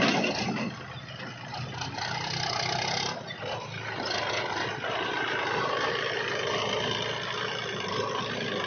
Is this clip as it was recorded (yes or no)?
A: yes